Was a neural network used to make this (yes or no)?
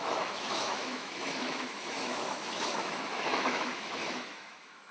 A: yes